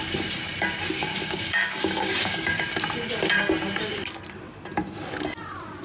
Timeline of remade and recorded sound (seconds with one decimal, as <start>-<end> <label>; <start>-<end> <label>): 0.0-1.0 recorded; 1.0-2.6 remade; 2.6-5.8 recorded

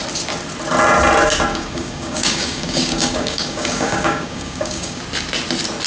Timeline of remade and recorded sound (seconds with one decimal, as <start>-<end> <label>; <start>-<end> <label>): 0.0-1.5 recorded; 1.5-5.0 remade; 5.0-5.9 recorded

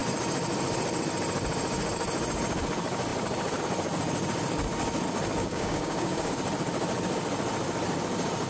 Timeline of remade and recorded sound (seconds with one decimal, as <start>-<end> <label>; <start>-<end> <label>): 0.0-5.4 recorded; 5.4-6.3 remade; 6.3-8.5 recorded

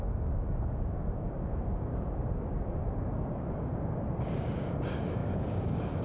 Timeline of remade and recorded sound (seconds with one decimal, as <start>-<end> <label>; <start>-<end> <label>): 0.0-6.0 remade

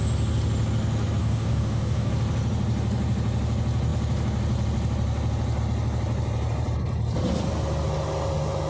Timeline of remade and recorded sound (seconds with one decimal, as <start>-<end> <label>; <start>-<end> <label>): 0.0-1.2 recorded; 1.2-2.1 remade; 2.1-8.7 recorded

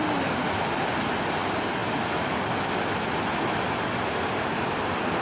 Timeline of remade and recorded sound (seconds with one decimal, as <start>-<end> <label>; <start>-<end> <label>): 0.0-5.2 recorded